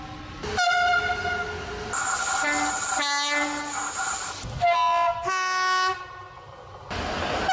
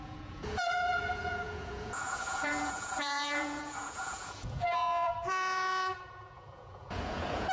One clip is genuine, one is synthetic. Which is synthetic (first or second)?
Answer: second